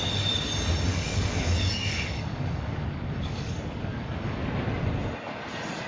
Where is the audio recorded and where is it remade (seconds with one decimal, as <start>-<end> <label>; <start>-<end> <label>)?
0.0-0.9 recorded; 0.9-4.4 remade; 4.4-5.9 recorded